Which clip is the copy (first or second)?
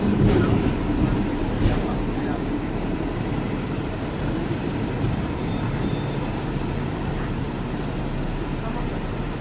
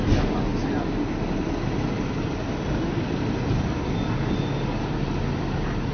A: first